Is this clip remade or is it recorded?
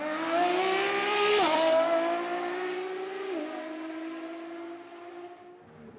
recorded